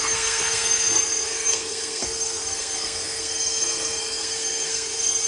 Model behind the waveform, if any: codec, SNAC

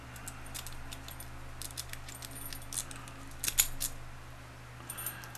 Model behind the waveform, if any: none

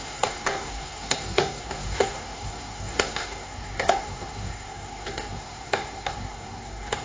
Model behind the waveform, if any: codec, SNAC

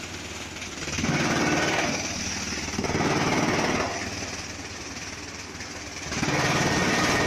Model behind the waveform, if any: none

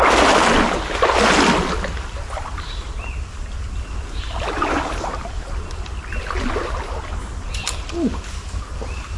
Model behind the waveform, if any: none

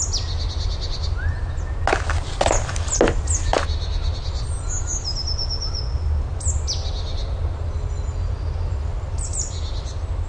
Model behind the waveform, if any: none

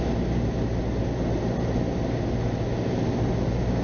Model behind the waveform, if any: none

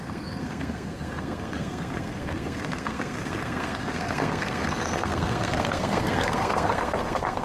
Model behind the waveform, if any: codec, SNAC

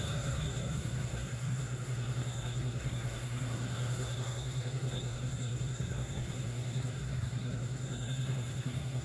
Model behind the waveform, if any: codec, SNAC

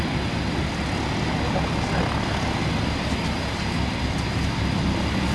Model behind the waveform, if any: none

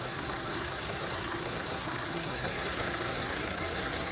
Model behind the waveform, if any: codec, SNAC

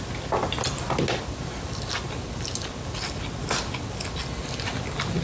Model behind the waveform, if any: none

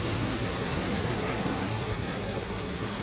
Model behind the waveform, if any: codec, SNAC